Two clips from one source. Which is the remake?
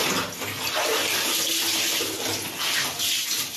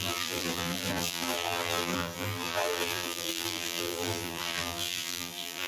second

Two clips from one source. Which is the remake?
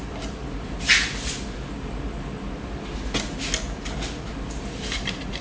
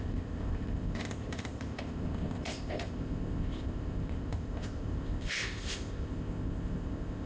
second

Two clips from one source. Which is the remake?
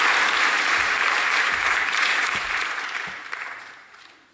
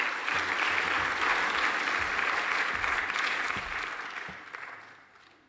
first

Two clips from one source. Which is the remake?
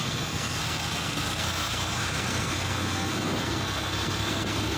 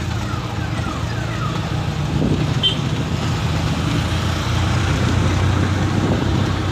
first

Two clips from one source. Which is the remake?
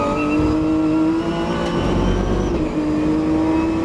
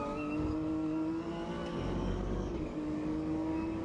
second